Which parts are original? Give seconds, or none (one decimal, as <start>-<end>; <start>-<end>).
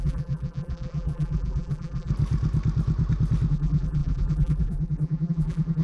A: 2.1-3.5